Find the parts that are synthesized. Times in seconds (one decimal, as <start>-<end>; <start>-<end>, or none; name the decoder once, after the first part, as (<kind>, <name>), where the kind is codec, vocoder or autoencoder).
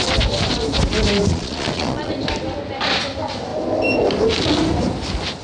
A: 1.3-2.1 (vocoder, Vocos)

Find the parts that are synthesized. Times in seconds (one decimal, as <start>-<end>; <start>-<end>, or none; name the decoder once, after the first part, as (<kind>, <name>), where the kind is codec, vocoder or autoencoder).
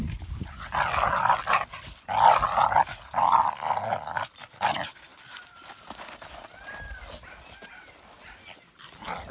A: none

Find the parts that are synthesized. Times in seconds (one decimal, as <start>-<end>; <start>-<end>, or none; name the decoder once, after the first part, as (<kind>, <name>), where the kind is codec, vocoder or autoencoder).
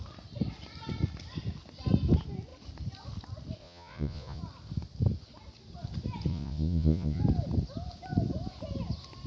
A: 3.6-4.4 (vocoder, Vocos); 6.3-7.2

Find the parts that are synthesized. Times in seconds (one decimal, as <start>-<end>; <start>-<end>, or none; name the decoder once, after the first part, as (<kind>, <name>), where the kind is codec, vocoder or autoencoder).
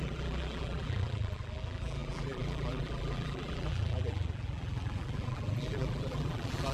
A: 0.0-6.7 (vocoder, BigVGAN v2)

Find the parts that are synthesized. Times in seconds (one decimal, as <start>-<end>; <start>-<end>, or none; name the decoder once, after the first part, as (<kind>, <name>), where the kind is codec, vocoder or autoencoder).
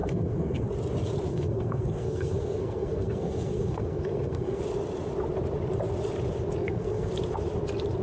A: 0.0-0.7 (codec, SNAC); 1.3-4.6; 6.6-7.1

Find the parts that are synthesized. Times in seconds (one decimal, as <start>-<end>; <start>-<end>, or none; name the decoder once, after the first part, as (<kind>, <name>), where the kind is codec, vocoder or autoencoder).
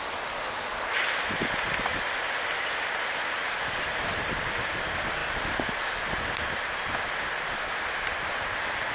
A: none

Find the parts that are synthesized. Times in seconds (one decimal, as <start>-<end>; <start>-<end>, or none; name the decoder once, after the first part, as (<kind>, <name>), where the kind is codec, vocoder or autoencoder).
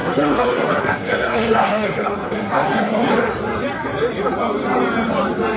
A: 0.0-3.1 (codec, SNAC)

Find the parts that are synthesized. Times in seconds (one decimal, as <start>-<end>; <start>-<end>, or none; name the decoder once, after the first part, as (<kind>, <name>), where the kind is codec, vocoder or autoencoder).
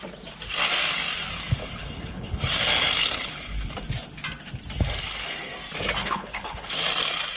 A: 1.6-2.4 (codec, HILCodec); 3.0-3.7; 6.0-6.7